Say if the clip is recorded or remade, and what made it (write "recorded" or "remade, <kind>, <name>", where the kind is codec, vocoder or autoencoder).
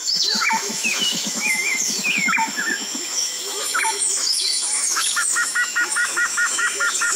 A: remade, autoencoder, DAC-VAE